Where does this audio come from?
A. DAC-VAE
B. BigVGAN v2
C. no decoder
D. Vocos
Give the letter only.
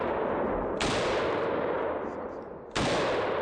C